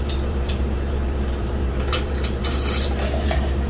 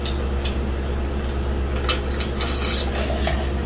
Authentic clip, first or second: second